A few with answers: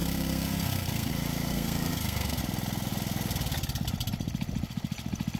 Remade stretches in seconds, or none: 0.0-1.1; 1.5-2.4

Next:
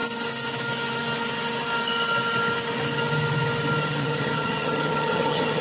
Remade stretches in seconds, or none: 3.8-5.6

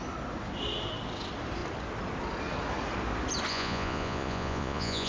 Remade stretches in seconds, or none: 3.5-5.1

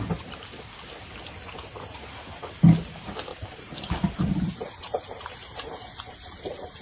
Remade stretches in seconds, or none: 3.3-6.8

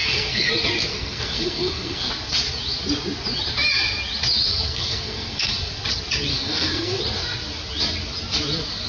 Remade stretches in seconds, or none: 0.0-0.5; 0.9-2.1; 4.5-5.5; 6.3-7.0

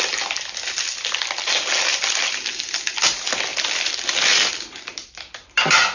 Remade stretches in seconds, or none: none

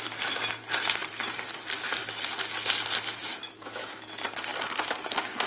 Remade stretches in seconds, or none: 3.3-4.1

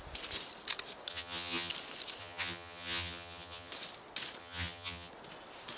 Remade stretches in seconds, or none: 1.1-1.7; 2.2-3.7; 4.4-5.1